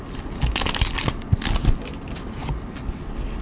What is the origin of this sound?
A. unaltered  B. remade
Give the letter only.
A